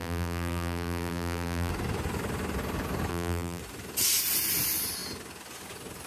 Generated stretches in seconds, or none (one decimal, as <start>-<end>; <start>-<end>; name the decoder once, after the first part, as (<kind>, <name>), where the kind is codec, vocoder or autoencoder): 0.0-1.7 (vocoder, BigVGAN v2); 3.1-3.6